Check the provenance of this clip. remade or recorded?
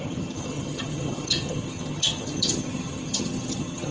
remade